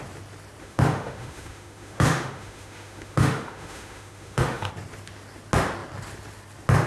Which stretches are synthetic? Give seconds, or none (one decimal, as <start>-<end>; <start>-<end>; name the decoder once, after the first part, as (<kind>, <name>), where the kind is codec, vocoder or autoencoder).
0.6-4.7 (autoencoder, DAC-VAE)